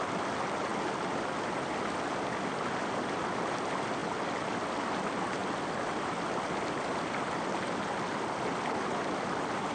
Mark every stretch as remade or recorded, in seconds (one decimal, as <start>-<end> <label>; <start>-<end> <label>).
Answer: 0.0-9.7 recorded